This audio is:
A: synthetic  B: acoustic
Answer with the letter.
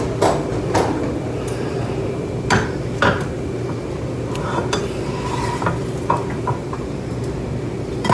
B